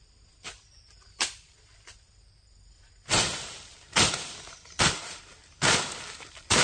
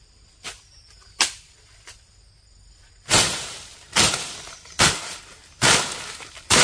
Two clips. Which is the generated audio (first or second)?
first